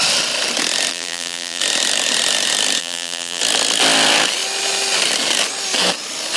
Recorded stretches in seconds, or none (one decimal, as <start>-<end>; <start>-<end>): 0.0-0.9; 1.6-2.8; 3.4-6.4